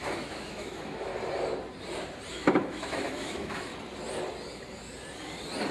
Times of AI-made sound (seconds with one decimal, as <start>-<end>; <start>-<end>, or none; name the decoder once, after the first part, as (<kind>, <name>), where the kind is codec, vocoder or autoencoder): 0.0-1.1 (autoencoder, DAC-VAE); 2.3-3.7